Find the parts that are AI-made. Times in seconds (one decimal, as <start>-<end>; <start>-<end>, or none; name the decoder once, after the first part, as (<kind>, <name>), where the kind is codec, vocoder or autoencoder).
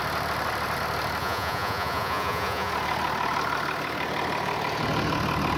1.2-2.7 (vocoder, Vocos)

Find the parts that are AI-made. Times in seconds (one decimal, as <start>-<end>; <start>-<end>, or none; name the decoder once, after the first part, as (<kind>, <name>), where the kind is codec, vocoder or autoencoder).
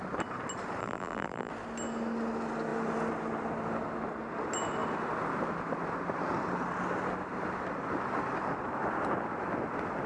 0.8-1.5 (vocoder, BigVGAN v2)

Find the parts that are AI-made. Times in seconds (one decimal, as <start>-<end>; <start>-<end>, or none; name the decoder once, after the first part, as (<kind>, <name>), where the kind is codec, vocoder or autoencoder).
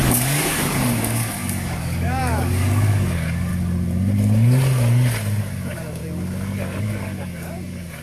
0.0-3.5 (codec, DAC); 5.4-6.0; 6.8-8.0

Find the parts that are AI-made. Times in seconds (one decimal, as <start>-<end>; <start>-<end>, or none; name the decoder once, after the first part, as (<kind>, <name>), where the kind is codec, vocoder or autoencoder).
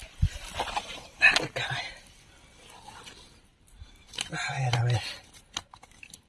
0.0-1.9 (vocoder, BigVGAN v2); 3.5-4.8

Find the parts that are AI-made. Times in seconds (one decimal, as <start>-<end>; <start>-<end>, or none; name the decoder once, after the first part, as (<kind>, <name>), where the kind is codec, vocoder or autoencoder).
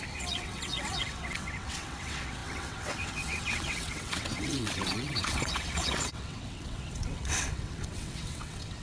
0.0-8.8 (vocoder, WaveNeXt)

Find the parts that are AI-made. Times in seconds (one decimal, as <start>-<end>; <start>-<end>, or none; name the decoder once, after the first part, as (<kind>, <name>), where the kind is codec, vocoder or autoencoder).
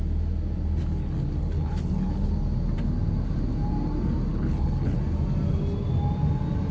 1.0-2.3 (codec, HILCodec); 4.3-5.0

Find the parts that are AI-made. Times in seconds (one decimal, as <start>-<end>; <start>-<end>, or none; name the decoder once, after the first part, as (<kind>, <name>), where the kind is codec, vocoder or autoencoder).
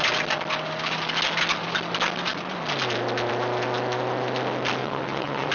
4.8-5.5 (vocoder, WaveNeXt)